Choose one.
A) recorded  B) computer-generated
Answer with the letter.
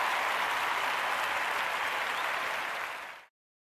A